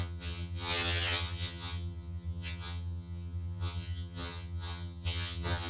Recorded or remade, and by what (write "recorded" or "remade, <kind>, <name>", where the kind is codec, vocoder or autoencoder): remade, vocoder, HiFi-GAN